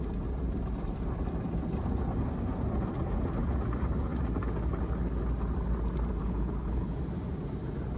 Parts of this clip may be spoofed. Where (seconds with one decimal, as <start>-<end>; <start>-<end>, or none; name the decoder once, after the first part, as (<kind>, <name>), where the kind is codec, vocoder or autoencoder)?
6.2-7.0 (codec, HILCodec)